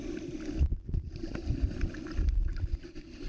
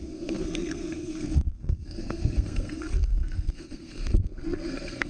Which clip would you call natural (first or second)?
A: first